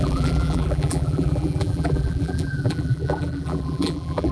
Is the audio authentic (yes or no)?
no